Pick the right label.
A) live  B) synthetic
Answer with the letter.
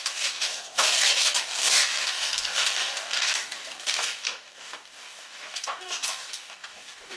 B